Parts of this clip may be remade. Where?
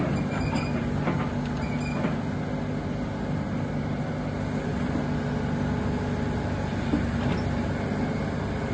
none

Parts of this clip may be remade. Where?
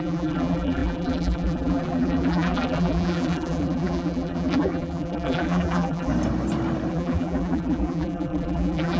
0.0-6.1 (vocoder, BigVGAN v2); 6.9-9.0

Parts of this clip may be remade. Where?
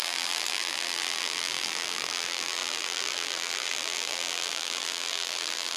0.0-5.8 (vocoder, BigVGAN v2)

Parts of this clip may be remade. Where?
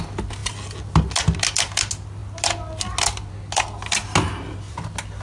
none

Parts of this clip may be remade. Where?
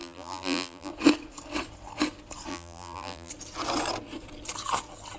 0.0-0.9 (vocoder, BigVGAN v2); 2.5-3.3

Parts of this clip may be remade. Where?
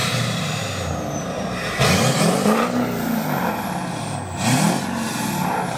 0.0-3.5 (vocoder, BigVGAN v2)